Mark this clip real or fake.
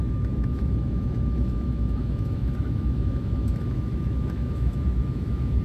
fake